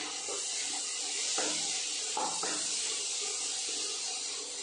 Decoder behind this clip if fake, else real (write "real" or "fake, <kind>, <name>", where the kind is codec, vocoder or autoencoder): real